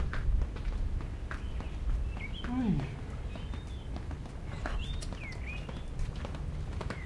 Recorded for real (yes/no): yes